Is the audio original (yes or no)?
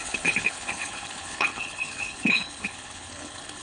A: no